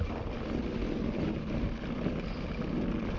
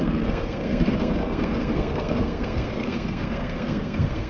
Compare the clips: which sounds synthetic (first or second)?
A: second